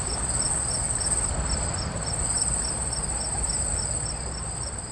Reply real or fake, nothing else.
real